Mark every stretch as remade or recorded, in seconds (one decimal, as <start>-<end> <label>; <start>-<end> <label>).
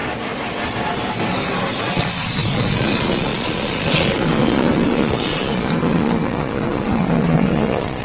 0.0-1.8 recorded; 1.8-8.0 remade